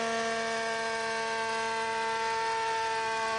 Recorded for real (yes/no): yes